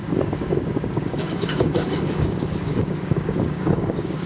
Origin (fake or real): fake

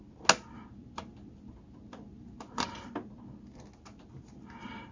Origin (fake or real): real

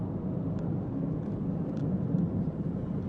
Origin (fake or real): real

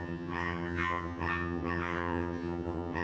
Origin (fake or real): fake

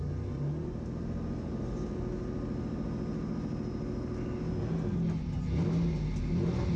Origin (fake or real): real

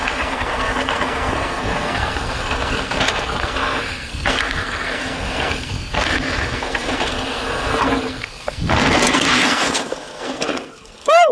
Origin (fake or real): fake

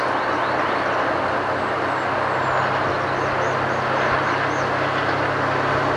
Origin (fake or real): real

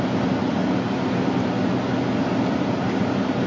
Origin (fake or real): real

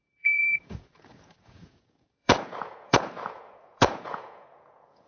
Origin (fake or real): fake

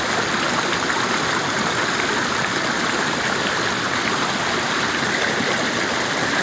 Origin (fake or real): real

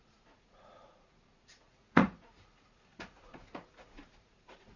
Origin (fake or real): fake